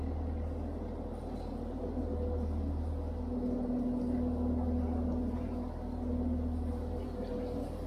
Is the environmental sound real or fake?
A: real